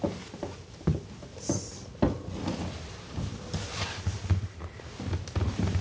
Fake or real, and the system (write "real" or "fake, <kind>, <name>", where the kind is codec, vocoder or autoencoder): real